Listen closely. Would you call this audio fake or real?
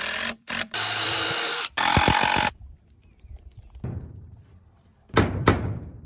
fake